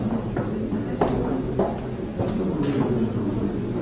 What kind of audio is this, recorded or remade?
recorded